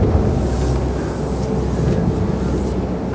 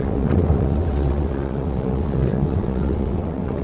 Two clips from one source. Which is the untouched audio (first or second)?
first